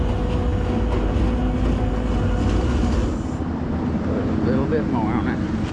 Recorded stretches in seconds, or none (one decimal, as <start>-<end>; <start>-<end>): 0.0-5.7